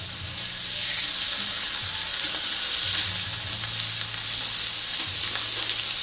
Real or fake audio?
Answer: real